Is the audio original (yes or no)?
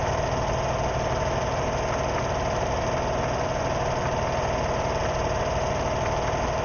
yes